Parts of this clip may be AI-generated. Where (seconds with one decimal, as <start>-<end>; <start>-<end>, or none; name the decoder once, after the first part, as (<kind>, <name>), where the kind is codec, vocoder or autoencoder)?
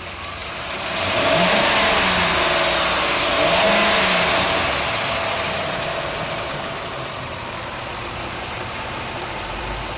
0.4-1.7 (vocoder, BigVGAN v2); 5.2-9.6